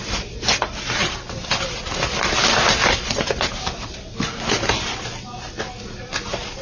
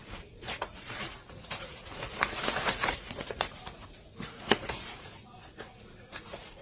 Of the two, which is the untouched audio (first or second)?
first